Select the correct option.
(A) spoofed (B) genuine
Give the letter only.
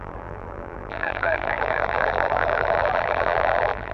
A